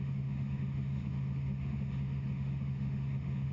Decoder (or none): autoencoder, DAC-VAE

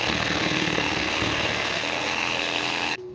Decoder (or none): codec, SNAC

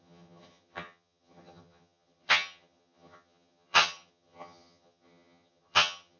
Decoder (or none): vocoder, HiFi-GAN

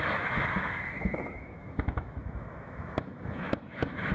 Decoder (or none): autoencoder, DAC-VAE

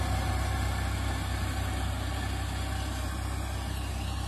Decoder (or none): none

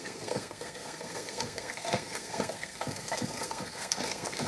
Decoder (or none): codec, SNAC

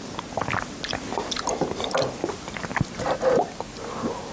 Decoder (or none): none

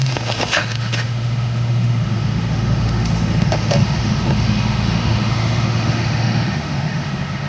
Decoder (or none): autoencoder, DAC-VAE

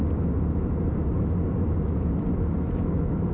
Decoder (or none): vocoder, BigVGAN v2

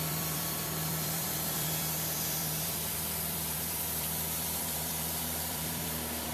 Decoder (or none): vocoder, BigVGAN v2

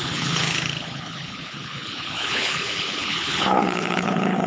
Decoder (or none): codec, HILCodec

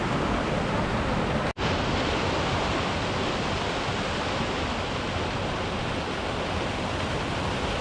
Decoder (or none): none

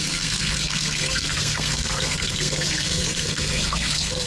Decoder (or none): codec, SNAC